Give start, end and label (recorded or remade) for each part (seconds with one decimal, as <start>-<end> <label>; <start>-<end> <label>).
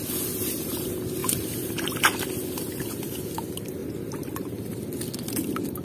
0.0-1.2 recorded; 1.2-2.3 remade; 2.3-5.8 recorded